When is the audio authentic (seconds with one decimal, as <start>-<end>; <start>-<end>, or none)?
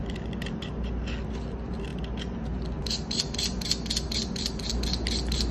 0.0-5.5